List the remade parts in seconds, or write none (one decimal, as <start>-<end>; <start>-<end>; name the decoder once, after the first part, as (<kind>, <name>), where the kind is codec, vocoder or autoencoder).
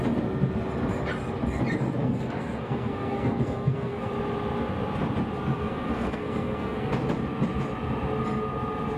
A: 2.0-4.1 (codec, SNAC); 5.5-6.9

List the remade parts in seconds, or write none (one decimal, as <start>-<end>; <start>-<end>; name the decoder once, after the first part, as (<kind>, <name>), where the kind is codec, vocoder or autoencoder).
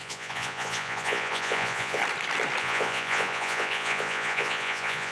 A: 0.0-2.0 (vocoder, Vocos); 2.6-5.1